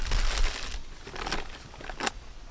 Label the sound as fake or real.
real